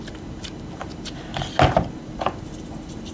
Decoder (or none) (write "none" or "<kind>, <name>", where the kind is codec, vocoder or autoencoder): none